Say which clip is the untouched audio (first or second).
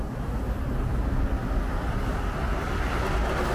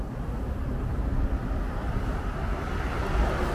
first